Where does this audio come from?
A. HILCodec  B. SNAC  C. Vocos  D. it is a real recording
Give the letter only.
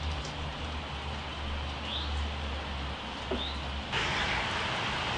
D